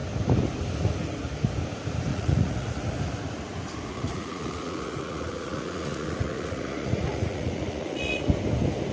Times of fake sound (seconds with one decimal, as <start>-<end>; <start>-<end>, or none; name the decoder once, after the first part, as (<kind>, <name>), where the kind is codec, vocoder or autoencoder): 2.1-2.8 (vocoder, Vocos); 3.9-8.3